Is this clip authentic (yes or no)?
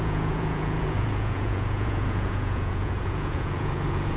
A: no